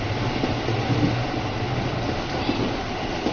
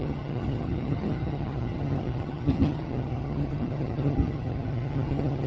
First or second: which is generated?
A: second